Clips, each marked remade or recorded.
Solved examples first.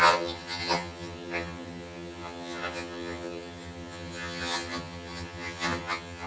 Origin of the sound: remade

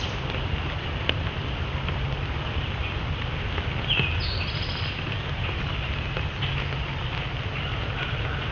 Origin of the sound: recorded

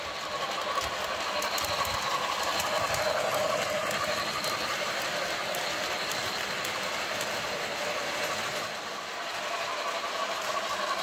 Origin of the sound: recorded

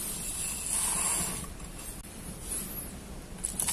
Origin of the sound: recorded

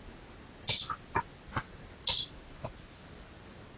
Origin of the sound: recorded